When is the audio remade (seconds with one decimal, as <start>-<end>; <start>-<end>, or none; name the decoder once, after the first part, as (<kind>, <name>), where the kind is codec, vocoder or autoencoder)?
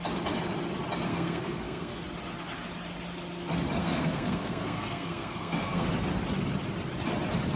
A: 1.1-2.0 (codec, SNAC); 3.8-5.9